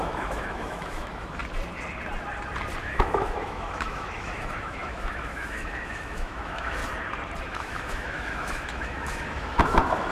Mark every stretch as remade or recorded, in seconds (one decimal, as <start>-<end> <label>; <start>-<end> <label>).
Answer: 0.0-1.4 remade; 1.4-2.8 recorded; 2.8-6.8 remade; 6.8-7.4 recorded; 7.4-10.1 remade